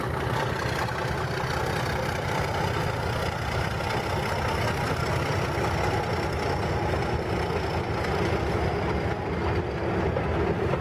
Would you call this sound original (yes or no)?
yes